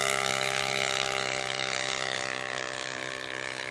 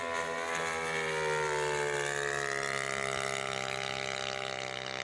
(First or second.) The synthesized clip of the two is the first